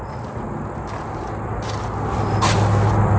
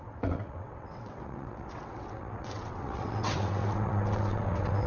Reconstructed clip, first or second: second